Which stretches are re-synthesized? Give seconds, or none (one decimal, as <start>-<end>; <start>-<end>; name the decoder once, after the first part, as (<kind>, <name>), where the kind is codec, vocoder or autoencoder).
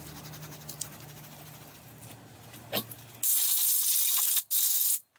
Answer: none